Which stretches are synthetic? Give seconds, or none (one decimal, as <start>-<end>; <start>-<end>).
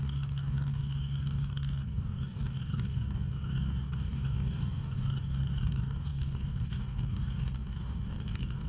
0.0-8.7